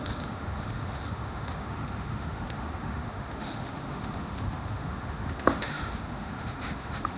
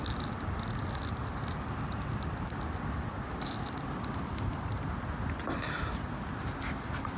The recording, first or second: second